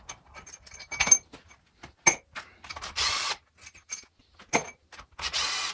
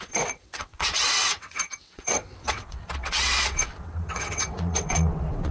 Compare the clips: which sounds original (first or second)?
first